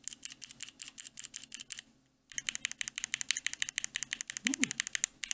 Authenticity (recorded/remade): recorded